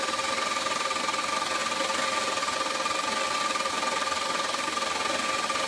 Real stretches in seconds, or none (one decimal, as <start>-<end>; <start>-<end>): 0.0-5.7